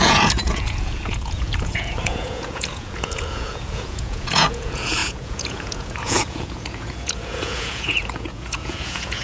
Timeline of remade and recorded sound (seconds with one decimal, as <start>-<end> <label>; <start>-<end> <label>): 0.0-9.2 remade